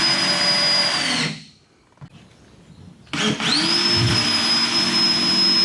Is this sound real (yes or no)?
yes